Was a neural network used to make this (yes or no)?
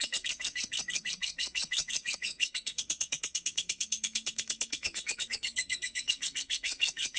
yes